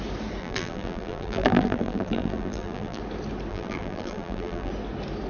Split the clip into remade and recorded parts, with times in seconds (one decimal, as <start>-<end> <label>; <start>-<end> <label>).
0.0-0.4 recorded; 0.4-3.0 remade; 3.0-3.5 recorded; 3.5-4.7 remade; 4.7-5.3 recorded